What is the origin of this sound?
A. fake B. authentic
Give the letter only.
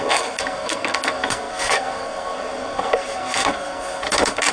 A